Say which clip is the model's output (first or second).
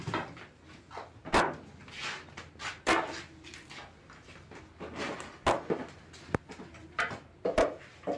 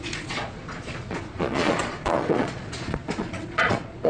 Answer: second